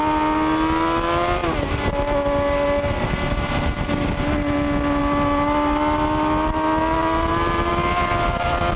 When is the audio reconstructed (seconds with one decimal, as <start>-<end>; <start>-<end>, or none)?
none